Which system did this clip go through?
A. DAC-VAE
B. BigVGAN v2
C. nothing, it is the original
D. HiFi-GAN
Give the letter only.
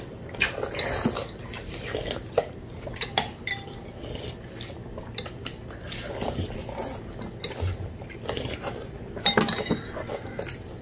C